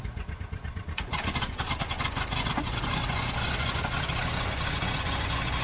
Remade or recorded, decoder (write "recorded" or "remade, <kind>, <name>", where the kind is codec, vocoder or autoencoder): remade, vocoder, Vocos